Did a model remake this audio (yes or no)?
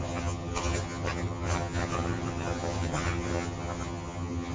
yes